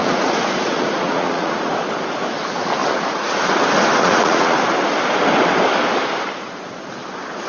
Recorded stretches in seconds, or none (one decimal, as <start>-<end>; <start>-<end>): 1.7-2.8; 3.4-4.0; 4.6-7.5